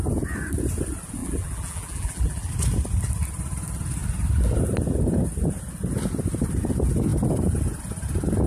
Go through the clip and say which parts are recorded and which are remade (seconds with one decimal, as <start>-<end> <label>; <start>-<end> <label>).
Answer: 0.0-1.2 recorded; 1.2-2.5 remade; 2.5-8.5 recorded